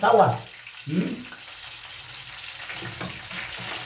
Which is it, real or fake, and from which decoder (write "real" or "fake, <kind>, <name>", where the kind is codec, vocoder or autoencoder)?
real